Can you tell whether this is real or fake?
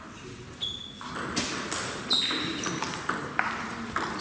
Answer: real